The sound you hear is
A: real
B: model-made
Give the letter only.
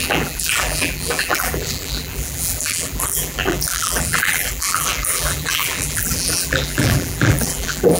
B